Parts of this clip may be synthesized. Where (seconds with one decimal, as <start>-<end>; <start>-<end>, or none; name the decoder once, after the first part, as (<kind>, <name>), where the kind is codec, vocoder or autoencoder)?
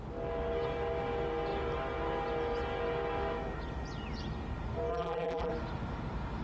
4.9-5.5 (vocoder, BigVGAN v2)